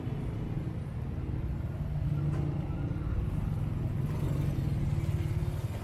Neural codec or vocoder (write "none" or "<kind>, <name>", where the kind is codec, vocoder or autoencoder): none